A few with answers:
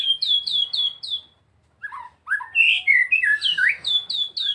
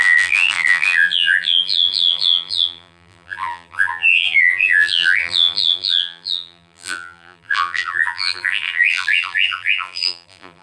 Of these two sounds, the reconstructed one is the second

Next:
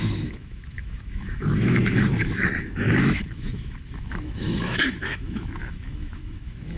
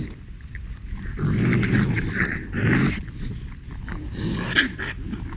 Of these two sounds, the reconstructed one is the first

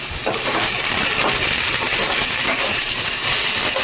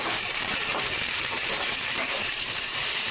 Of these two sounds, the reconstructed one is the second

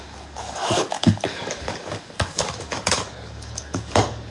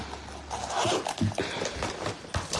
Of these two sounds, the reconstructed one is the first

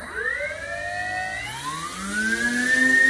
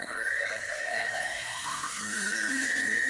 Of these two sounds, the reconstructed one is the second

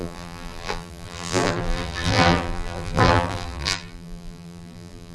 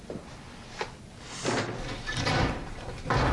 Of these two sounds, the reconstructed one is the first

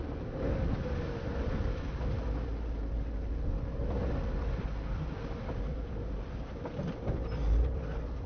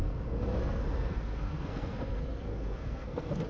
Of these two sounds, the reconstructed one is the second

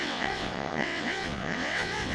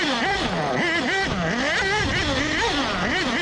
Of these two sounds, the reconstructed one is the first